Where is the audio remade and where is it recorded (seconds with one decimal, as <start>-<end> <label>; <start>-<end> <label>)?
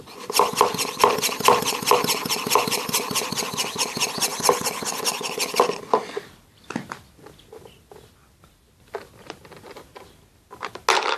0.0-4.3 recorded; 4.3-5.2 remade; 5.2-11.2 recorded